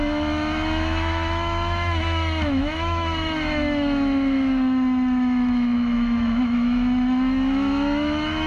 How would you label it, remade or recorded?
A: remade